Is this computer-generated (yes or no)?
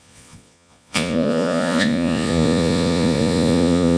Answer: yes